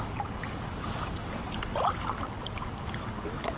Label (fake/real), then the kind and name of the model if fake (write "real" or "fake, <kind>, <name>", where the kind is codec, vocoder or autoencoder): real